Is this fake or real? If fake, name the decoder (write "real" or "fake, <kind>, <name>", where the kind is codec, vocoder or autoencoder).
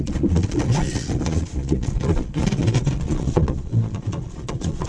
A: fake, vocoder, Vocos